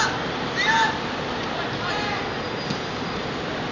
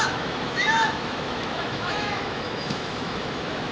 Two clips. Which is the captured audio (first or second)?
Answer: first